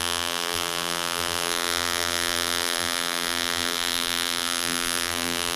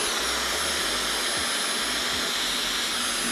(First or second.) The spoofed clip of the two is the first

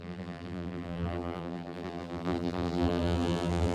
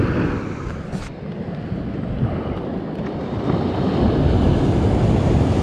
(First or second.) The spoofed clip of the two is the first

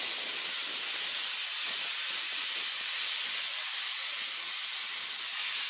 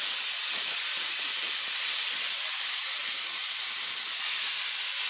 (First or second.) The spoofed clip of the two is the second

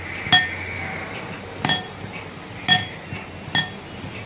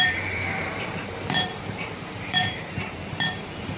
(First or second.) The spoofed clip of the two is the second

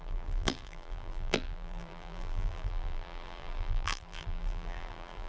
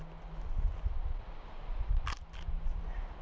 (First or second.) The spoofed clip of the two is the first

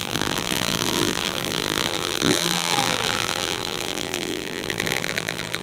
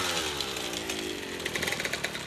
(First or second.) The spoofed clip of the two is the first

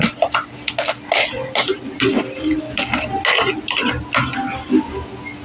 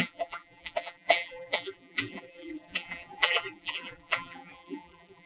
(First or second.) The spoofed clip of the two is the second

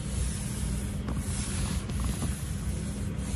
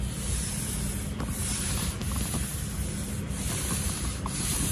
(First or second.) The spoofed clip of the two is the second